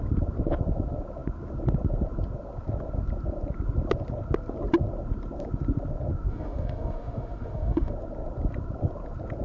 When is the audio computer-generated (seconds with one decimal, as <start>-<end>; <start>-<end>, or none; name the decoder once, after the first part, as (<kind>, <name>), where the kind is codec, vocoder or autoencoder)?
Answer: 6.3-7.9 (autoencoder, DAC-VAE)